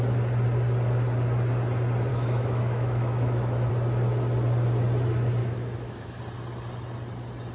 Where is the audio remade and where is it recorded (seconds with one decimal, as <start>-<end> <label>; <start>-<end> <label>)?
0.0-2.1 recorded; 2.1-3.7 remade; 3.7-5.4 recorded; 5.4-6.2 remade; 6.2-7.5 recorded